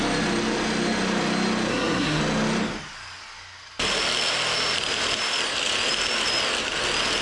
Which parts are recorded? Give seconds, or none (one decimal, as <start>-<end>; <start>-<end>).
0.0-1.7; 2.2-7.2